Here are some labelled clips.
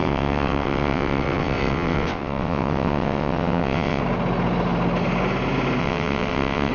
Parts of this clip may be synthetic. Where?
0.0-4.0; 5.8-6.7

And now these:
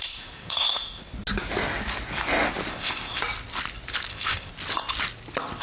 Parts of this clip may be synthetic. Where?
0.0-1.0; 2.7-3.2; 4.1-4.5